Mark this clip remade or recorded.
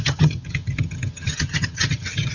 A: remade